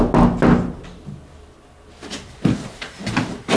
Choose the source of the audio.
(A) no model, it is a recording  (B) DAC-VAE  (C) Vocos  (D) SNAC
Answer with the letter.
A